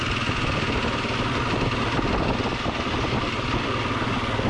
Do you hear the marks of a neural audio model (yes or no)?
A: yes